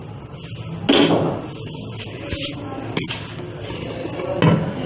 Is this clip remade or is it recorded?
recorded